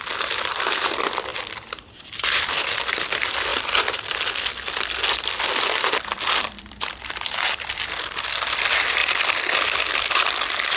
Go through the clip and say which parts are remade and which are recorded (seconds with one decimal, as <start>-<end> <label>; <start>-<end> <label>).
0.0-10.8 remade